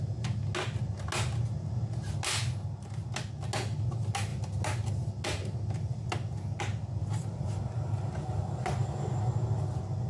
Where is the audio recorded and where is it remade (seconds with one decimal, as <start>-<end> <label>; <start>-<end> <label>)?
0.0-7.0 recorded; 7.0-7.6 remade; 7.6-10.1 recorded

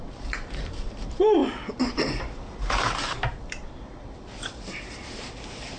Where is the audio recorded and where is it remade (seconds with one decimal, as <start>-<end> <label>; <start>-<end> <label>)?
0.0-5.8 remade

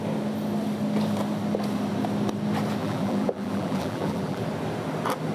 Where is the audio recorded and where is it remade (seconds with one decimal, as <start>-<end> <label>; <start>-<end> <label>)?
0.0-2.8 recorded; 2.8-4.4 remade; 4.4-5.3 recorded